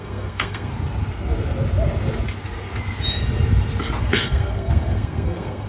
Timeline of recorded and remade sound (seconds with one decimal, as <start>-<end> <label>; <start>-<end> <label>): 0.0-0.7 remade; 0.7-4.0 recorded; 4.0-5.7 remade

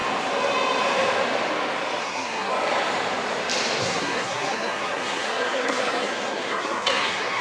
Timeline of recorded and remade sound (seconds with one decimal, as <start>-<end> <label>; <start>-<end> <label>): 0.0-2.0 recorded; 2.0-2.5 remade; 2.5-3.8 recorded; 3.8-7.4 remade

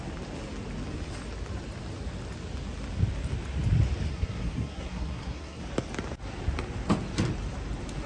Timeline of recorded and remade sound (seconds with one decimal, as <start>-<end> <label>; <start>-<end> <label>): 0.0-4.1 recorded; 4.1-5.6 remade; 5.6-8.1 recorded

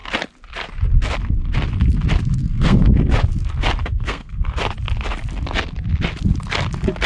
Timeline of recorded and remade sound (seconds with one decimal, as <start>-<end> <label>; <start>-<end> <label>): 0.0-2.4 recorded; 2.4-2.9 remade; 2.9-3.8 recorded; 3.8-4.4 remade; 4.4-7.1 recorded

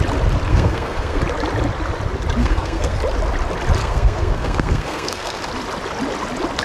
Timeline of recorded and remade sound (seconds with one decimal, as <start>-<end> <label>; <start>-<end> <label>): 0.0-0.5 recorded; 0.5-1.2 remade; 1.2-2.4 recorded; 2.4-3.0 remade; 3.0-3.8 recorded; 3.8-5.4 remade; 5.4-6.6 recorded

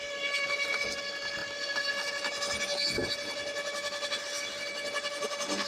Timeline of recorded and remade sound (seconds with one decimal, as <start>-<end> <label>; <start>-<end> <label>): 0.0-5.7 recorded

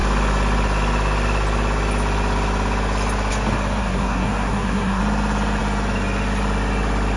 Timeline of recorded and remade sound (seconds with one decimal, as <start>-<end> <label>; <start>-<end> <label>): 0.0-3.8 recorded; 3.8-5.0 remade; 5.0-7.2 recorded